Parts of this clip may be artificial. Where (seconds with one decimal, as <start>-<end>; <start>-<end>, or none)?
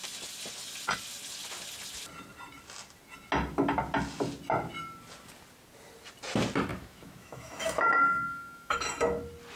6.7-8.8